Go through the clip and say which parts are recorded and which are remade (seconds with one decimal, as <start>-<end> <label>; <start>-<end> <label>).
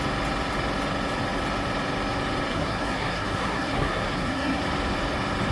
0.0-2.5 recorded; 2.5-4.6 remade; 4.6-5.5 recorded